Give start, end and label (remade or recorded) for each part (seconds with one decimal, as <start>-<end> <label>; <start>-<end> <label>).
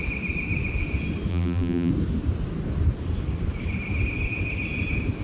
0.0-1.3 recorded; 1.3-1.9 remade; 1.9-5.2 recorded